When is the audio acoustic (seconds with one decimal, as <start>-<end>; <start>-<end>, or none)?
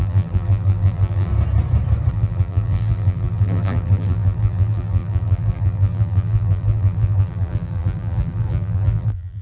1.3-2.1